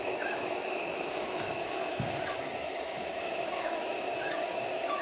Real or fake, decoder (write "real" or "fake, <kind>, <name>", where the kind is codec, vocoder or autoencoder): fake, autoencoder, DAC-VAE